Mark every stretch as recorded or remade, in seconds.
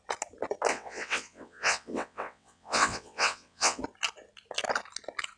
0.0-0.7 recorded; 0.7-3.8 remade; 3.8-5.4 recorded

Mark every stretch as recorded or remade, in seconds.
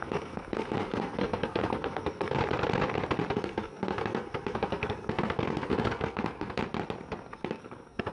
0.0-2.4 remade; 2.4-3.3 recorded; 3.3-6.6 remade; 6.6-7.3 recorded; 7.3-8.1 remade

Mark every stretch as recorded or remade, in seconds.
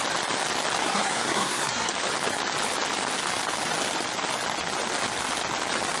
0.0-0.8 recorded; 0.8-1.9 remade; 1.9-6.0 recorded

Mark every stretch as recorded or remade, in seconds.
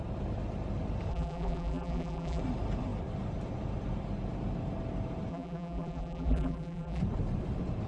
0.0-1.1 recorded; 1.1-2.4 remade; 2.4-5.3 recorded; 5.3-7.0 remade; 7.0-7.9 recorded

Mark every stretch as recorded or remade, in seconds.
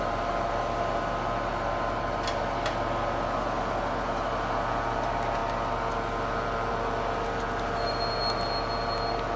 0.0-9.4 recorded